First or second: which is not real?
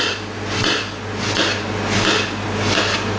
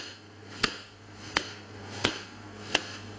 second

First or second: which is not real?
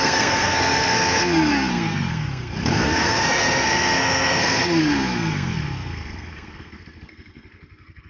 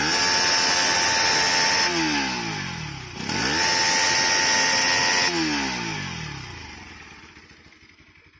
first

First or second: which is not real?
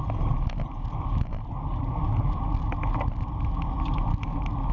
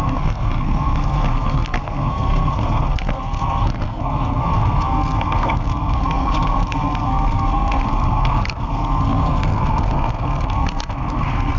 second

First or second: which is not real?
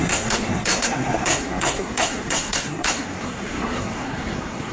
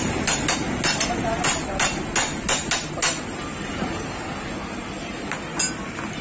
first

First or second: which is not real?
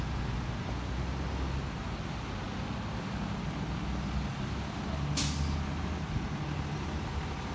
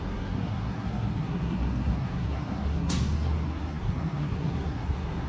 second